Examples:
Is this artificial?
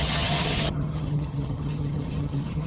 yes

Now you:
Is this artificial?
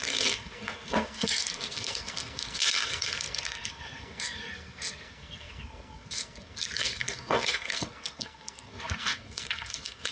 yes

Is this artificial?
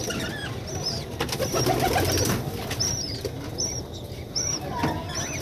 no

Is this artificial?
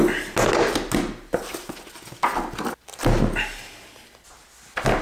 no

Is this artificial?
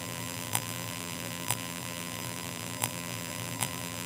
yes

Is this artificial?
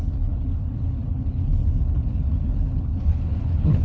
yes